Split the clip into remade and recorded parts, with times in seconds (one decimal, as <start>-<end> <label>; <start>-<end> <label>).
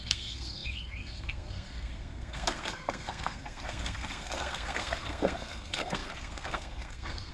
0.0-7.3 remade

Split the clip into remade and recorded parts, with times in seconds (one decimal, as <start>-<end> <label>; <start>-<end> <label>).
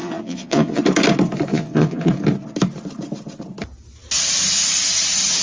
0.0-0.8 remade; 0.8-1.5 recorded; 1.5-2.1 remade; 2.1-5.4 recorded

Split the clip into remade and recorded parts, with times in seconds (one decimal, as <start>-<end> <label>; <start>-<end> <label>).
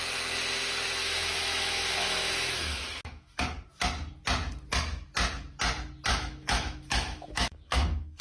0.0-1.0 recorded; 1.0-3.4 remade; 3.4-6.1 recorded; 6.1-8.2 remade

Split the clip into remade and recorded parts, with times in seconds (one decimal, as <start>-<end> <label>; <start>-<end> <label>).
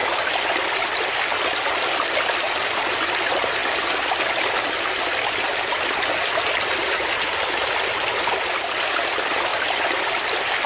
0.0-10.7 recorded